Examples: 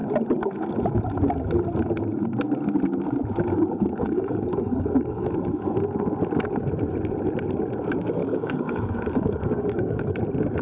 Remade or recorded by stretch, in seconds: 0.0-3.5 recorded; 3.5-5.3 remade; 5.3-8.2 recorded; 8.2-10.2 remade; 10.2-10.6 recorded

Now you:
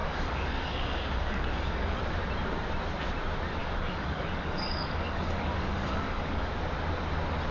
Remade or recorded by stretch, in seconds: 0.0-2.0 remade; 2.0-3.6 recorded; 3.6-6.5 remade; 6.5-7.5 recorded